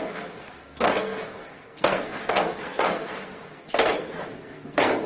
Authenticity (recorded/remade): remade